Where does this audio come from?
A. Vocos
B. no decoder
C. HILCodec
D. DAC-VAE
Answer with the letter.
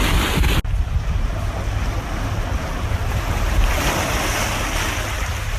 B